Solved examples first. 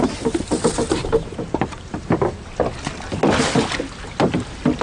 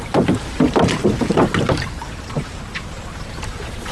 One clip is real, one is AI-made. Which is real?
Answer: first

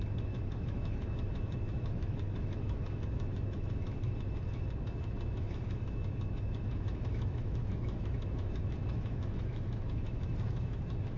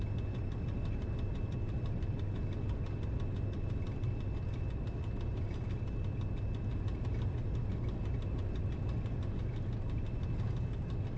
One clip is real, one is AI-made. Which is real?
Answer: second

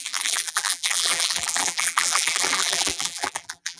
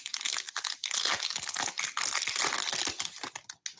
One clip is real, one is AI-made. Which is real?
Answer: second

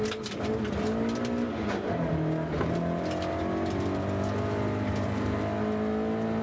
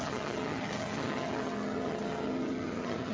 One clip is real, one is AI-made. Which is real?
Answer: first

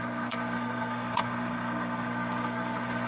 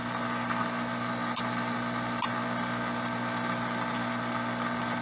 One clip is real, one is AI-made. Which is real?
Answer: second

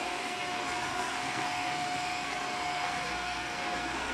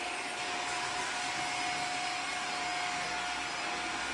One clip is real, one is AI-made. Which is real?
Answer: second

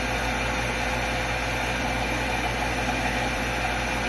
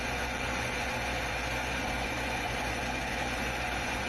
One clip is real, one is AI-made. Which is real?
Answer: first